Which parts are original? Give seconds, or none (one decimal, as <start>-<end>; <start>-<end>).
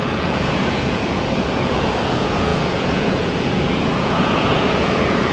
none